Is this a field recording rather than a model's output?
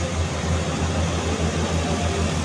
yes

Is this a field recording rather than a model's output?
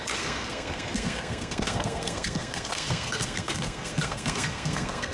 no